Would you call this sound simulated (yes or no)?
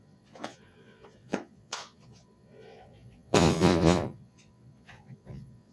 yes